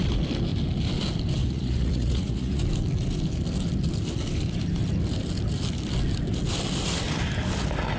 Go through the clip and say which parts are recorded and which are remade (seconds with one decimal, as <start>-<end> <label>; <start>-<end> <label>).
0.0-1.4 recorded; 1.4-2.6 remade; 2.6-8.0 recorded